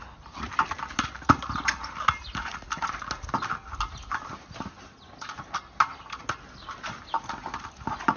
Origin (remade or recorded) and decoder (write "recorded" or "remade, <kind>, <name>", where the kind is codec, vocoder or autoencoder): recorded